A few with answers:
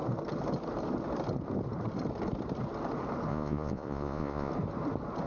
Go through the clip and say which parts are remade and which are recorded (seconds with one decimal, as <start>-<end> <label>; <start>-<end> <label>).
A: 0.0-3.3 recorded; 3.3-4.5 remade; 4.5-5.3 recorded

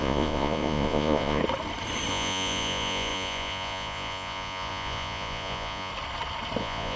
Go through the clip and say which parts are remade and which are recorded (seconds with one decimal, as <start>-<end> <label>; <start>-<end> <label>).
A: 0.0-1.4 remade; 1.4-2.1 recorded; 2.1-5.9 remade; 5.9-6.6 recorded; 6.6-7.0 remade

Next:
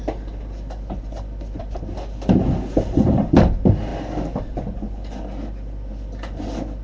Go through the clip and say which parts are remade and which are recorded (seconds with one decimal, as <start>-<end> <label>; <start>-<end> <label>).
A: 0.0-6.8 recorded

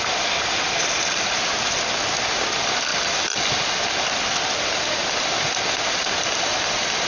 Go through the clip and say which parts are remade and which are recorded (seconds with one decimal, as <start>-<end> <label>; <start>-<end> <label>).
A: 0.0-7.1 recorded

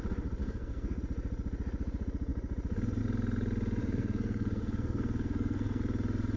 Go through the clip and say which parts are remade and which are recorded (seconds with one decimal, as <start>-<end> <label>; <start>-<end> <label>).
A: 0.0-0.4 recorded; 0.4-1.0 remade; 1.0-3.8 recorded; 3.8-5.8 remade; 5.8-6.4 recorded

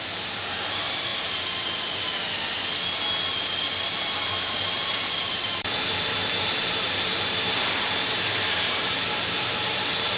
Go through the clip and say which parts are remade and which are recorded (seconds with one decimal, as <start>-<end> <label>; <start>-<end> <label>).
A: 0.0-1.1 remade; 1.1-4.0 recorded; 4.0-10.2 remade